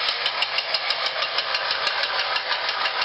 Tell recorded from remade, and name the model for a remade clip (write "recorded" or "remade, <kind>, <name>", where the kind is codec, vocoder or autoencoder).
recorded